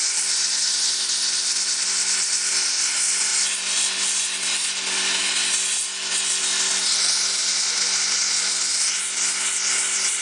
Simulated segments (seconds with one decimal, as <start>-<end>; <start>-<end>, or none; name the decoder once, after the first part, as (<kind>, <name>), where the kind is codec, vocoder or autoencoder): none